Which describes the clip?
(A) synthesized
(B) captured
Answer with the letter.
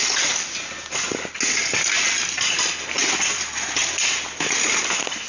B